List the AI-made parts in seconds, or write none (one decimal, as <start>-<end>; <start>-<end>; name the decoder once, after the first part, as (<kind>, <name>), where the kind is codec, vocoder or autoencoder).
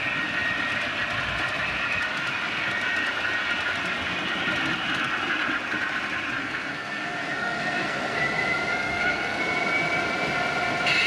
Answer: 6.4-8.2 (codec, SNAC); 8.7-9.4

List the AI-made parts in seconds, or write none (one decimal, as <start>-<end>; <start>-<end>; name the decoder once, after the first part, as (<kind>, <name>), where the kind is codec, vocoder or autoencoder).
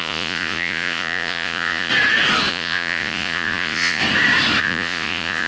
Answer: 0.0-1.9 (vocoder, Vocos); 2.5-4.0; 4.6-5.5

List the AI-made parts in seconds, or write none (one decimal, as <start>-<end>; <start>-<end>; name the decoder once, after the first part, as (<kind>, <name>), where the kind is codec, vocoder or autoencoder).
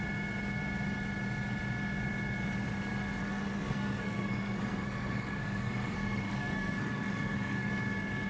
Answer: 3.2-7.7 (codec, SNAC)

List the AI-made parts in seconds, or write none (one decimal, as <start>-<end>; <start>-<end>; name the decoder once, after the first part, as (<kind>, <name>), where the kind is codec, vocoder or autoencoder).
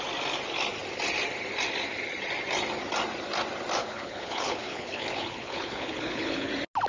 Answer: 3.8-6.5 (codec, HILCodec)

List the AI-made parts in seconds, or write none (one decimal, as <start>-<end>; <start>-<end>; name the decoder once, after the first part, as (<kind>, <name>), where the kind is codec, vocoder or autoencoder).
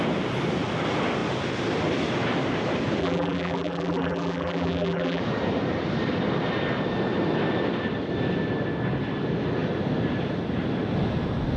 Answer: 3.0-5.2 (vocoder, BigVGAN v2)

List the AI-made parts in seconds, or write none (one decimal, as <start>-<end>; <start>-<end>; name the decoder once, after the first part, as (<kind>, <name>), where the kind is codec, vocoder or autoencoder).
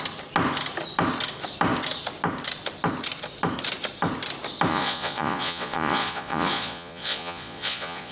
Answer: 4.7-8.1 (vocoder, Vocos)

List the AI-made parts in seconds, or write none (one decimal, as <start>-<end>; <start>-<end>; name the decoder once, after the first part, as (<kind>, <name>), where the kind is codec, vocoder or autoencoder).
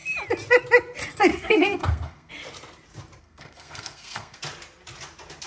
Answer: 1.3-2.3 (codec, SNAC); 3.2-4.4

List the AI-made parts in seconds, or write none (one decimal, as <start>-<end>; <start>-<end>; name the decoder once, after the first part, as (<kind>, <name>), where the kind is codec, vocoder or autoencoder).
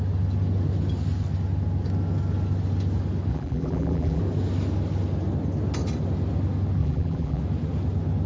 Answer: 3.3-4.2 (vocoder, BigVGAN v2); 6.8-7.4